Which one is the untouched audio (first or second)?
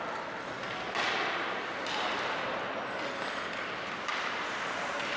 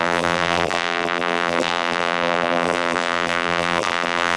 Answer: first